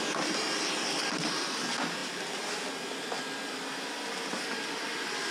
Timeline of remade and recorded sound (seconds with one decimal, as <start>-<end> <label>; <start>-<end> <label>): 0.0-5.3 recorded